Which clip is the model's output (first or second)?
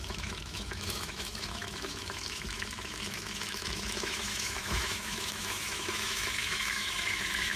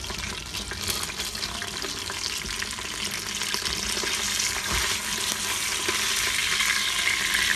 first